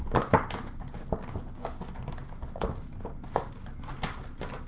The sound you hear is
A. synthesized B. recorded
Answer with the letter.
B